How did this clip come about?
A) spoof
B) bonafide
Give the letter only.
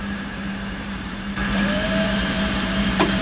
A